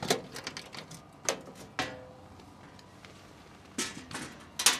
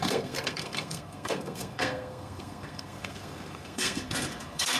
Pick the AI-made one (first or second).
second